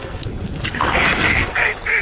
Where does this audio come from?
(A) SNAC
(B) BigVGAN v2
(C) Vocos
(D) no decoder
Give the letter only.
A